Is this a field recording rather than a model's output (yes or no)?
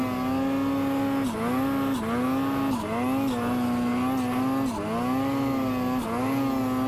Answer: yes